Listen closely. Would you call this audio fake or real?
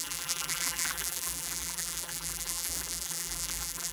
fake